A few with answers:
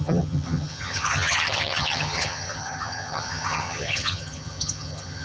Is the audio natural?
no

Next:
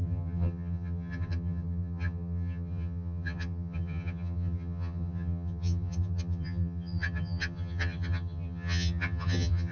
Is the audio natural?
no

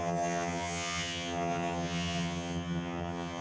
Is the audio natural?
no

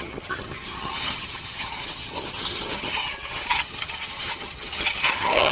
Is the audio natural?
no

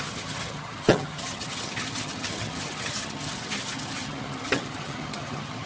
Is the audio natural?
no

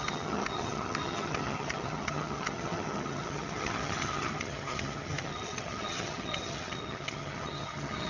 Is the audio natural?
no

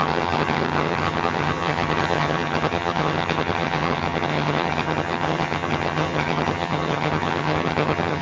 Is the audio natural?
no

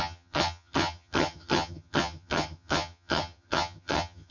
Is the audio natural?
no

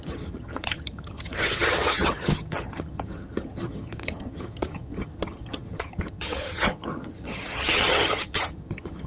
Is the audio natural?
no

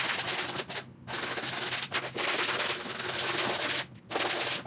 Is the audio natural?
yes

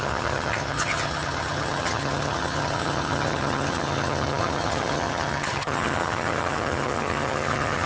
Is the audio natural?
no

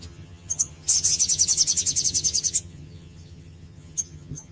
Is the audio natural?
no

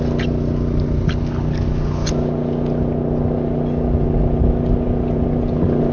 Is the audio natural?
yes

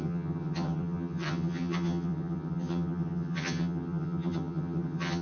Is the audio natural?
no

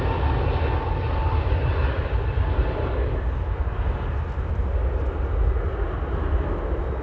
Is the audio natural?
yes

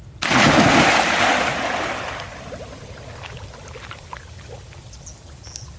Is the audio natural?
yes